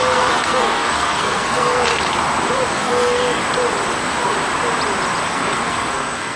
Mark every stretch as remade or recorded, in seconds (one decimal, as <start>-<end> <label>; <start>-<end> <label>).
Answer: 0.0-1.9 remade; 1.9-2.7 recorded; 2.7-3.4 remade; 3.4-5.3 recorded; 5.3-6.4 remade